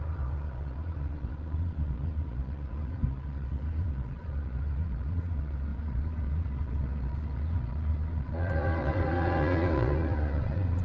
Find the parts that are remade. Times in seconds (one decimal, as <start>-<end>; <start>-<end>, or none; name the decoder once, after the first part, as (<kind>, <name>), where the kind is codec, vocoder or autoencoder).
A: 0.0-10.8 (vocoder, Vocos)